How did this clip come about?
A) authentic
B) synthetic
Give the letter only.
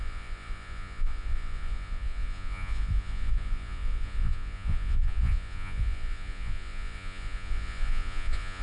B